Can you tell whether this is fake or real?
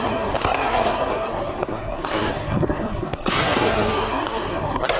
fake